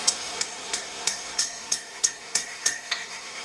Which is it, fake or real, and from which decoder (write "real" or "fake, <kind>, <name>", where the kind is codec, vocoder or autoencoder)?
fake, codec, SNAC